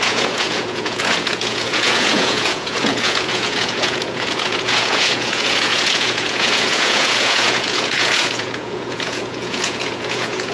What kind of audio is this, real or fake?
fake